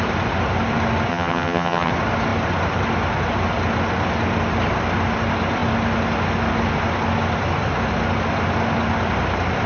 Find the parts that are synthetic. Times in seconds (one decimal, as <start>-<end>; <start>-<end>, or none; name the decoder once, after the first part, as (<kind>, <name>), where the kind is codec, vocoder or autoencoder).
1.1-1.9 (vocoder, HiFi-GAN)

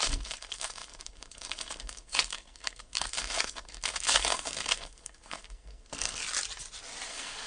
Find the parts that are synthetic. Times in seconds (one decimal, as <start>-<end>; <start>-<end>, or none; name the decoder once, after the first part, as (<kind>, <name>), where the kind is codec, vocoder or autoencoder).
0.0-6.2 (codec, SNAC); 7.1-7.5

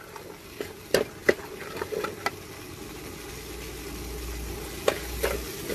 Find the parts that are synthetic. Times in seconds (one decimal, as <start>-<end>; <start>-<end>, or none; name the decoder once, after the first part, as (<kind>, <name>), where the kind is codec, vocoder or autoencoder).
none

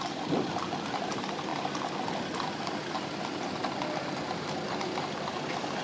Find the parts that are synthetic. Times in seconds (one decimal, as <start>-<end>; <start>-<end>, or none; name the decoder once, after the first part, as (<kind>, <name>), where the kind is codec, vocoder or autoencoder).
none

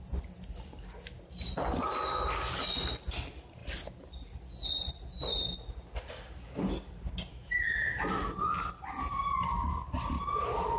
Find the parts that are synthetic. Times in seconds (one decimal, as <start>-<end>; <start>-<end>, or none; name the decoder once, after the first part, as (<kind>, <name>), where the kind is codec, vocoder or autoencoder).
7.3-8.0 (autoencoder, DAC-VAE)

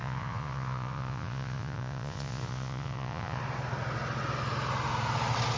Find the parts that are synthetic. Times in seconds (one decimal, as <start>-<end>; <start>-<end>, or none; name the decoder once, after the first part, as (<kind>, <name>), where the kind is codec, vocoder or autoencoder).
0.0-3.4 (vocoder, Vocos)